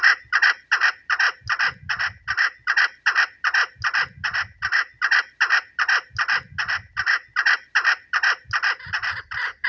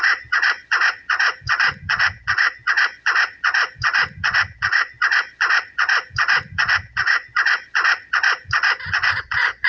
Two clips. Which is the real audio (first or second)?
first